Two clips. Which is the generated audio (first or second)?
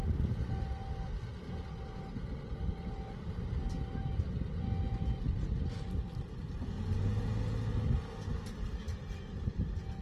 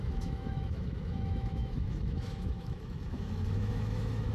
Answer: second